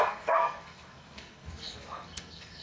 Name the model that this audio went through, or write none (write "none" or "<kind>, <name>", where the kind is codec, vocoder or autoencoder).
codec, SNAC